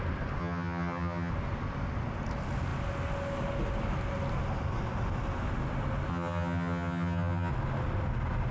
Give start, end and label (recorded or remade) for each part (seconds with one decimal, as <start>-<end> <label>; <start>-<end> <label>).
0.0-0.4 recorded; 0.4-1.3 remade; 1.3-6.1 recorded; 6.1-7.5 remade; 7.5-8.5 recorded

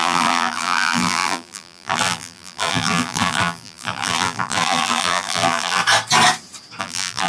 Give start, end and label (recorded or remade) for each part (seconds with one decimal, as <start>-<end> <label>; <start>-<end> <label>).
0.0-5.8 remade; 5.8-6.8 recorded; 6.8-7.3 remade